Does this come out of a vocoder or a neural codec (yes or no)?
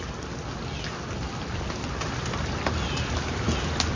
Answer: no